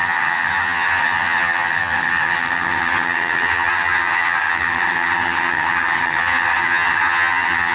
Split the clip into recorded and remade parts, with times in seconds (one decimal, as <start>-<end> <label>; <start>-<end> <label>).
0.0-7.7 remade